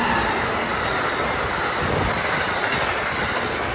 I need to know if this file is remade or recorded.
recorded